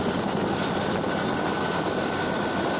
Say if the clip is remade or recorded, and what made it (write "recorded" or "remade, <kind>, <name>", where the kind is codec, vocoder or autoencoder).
recorded